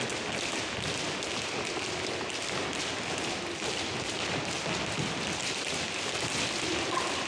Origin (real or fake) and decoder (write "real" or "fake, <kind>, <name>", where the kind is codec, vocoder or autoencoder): real